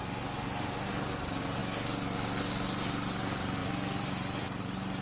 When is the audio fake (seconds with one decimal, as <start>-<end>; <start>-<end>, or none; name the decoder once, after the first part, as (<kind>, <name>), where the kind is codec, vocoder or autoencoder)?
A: none